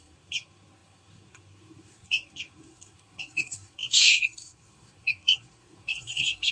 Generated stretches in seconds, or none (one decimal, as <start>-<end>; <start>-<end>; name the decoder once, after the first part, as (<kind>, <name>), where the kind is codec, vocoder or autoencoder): 0.0-6.5 (codec, SNAC)